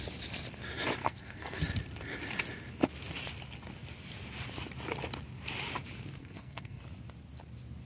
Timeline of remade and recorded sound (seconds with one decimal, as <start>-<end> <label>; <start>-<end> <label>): 0.0-1.0 recorded; 1.0-1.6 remade; 1.6-6.2 recorded; 6.2-6.8 remade; 6.8-7.8 recorded